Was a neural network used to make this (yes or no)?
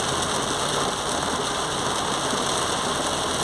no